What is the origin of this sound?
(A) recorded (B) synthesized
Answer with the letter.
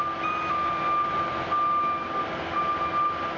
A